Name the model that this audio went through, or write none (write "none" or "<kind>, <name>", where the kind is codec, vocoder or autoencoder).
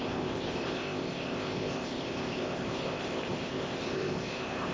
codec, ZipCodec